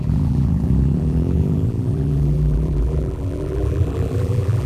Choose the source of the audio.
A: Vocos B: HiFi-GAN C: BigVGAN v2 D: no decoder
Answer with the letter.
C